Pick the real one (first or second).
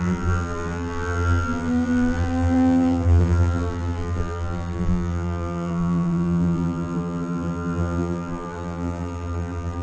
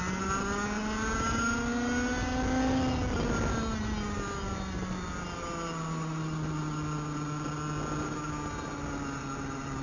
second